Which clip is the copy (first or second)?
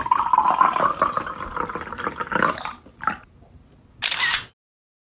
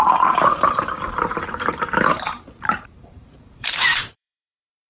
second